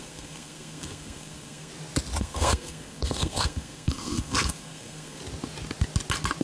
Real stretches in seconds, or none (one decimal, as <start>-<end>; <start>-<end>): 1.7-2.2; 5.2-6.4